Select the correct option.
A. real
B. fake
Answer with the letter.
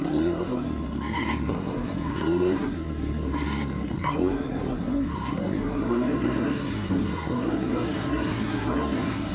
B